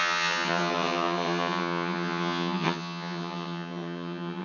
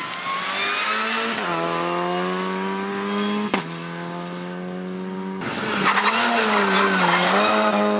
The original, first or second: second